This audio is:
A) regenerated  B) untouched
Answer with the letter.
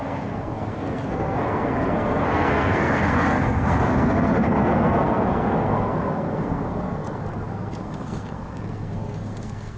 A